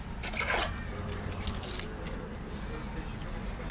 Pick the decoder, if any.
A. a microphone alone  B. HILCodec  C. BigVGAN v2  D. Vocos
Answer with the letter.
A